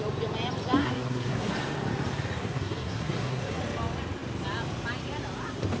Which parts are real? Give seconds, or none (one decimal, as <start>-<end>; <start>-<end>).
0.0-0.8; 1.5-2.4; 3.6-5.8